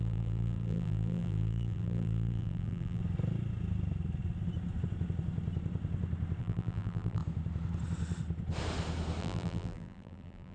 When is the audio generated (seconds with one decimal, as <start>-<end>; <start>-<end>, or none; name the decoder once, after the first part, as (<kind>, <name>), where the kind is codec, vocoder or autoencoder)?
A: 0.0-3.0 (vocoder, BigVGAN v2); 6.4-7.2; 9.2-10.5